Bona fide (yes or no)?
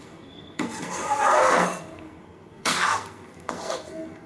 no